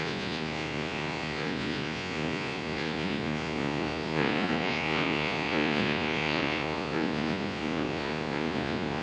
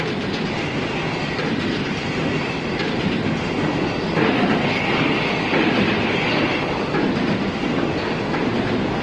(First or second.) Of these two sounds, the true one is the second